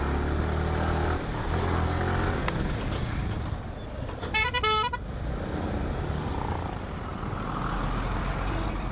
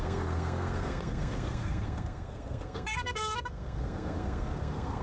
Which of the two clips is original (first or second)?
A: first